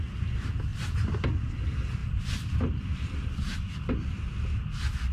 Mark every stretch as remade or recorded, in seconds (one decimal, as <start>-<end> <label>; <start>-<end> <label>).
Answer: 0.0-2.0 recorded; 2.0-2.8 remade; 2.8-5.1 recorded